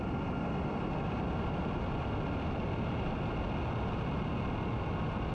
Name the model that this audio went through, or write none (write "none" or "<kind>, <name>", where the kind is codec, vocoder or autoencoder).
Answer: none